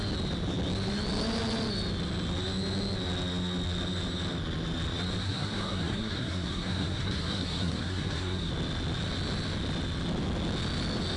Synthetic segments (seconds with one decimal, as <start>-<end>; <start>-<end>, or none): 5.2-8.5